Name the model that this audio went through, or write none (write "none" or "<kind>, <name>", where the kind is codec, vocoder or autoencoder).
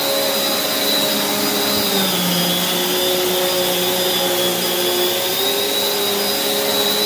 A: none